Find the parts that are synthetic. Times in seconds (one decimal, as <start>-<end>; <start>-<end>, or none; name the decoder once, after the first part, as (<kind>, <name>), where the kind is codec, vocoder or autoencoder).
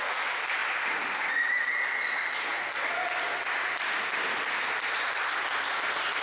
none